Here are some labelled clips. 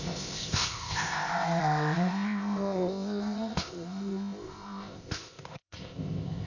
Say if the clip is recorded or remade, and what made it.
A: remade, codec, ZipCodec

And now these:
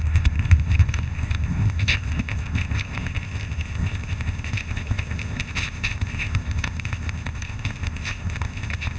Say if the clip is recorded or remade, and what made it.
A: remade, codec, ZipCodec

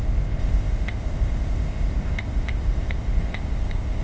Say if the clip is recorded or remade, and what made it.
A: remade, codec, ZipCodec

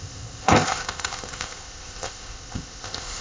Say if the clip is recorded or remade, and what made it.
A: remade, codec, ZipCodec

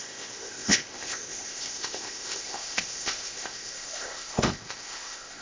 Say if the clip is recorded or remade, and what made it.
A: remade, codec, ZipCodec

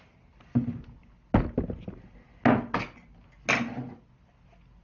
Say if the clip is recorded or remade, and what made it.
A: recorded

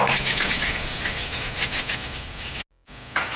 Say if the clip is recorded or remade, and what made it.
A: recorded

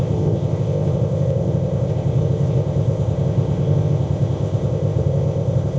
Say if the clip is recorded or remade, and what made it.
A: remade, codec, ZipCodec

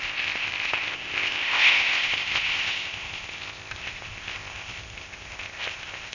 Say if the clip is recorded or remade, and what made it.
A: remade, codec, ZipCodec